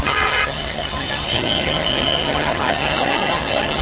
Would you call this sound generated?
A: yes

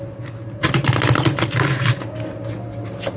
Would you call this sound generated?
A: no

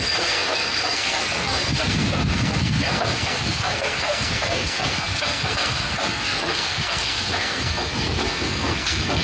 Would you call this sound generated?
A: yes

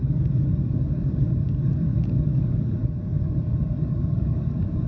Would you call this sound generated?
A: yes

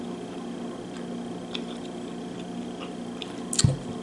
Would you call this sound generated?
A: no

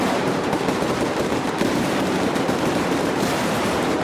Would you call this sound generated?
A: yes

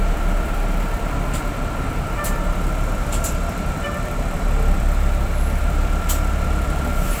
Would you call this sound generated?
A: yes